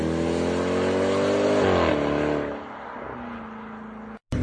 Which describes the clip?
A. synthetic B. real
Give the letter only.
B